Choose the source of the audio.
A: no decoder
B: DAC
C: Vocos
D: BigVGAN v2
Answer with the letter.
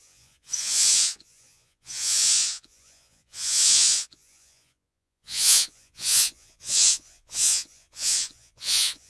C